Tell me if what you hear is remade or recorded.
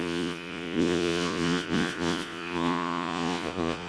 remade